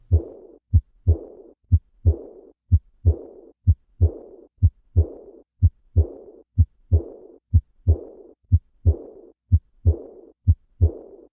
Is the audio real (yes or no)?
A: no